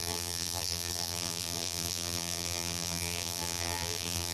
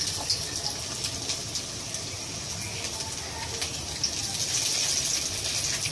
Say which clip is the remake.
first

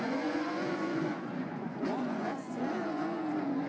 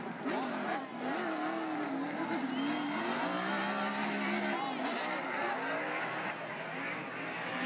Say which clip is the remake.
first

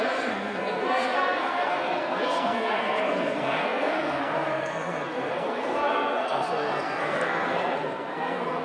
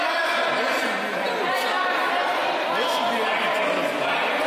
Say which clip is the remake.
first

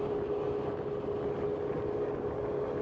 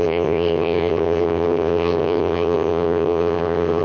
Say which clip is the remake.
second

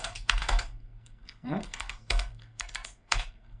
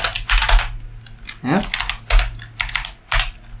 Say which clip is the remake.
first